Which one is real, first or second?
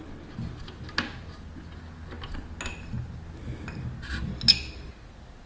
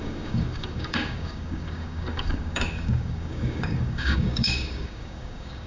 first